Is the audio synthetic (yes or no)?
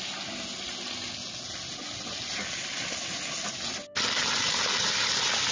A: no